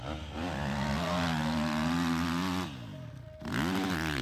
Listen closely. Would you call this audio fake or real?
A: real